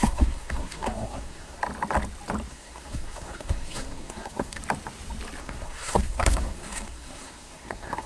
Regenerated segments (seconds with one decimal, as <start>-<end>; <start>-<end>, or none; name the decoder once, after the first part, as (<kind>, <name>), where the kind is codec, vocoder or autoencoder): 0.0-1.6 (codec, SNAC); 2.5-4.6; 5.4-8.1

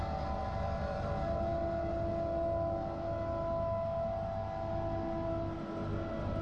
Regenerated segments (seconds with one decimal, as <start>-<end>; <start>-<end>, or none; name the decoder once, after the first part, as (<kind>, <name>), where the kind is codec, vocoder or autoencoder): 0.4-1.1 (vocoder, BigVGAN v2)

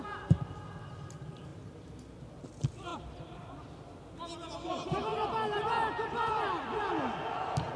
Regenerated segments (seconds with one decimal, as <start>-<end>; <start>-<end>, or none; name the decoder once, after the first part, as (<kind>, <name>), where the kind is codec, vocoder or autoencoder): 1.5-2.2 (vocoder, BigVGAN v2)

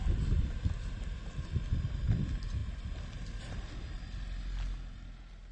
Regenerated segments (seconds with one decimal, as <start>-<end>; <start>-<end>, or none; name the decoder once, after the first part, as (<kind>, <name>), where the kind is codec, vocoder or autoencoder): none

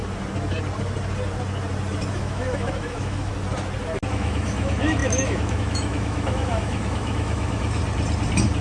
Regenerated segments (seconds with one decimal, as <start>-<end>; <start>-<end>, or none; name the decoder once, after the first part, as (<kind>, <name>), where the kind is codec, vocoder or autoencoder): 2.1-3.3 (autoencoder, DAC-VAE); 4.1-7.8

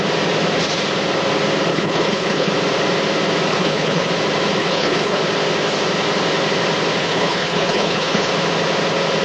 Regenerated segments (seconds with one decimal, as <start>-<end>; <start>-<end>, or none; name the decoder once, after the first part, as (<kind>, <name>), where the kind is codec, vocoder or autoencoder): 1.7-2.5 (codec, HILCodec); 3.5-4.1; 4.6-5.2; 7.0-8.3

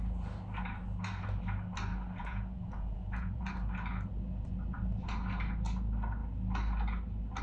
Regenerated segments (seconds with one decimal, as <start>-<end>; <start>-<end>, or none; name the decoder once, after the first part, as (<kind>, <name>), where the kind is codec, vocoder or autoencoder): 2.2-3.5 (vocoder, Vocos)